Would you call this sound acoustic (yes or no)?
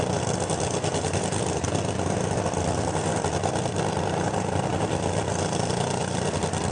yes